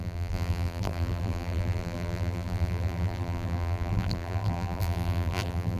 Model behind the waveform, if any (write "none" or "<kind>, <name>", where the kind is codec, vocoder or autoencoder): vocoder, BigVGAN v2